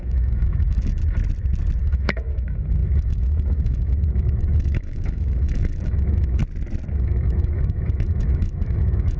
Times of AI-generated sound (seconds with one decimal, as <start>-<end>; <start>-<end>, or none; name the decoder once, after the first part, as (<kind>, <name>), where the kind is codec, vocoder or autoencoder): 0.0-1.0 (autoencoder, DAC-VAE); 1.8-6.4; 6.9-9.2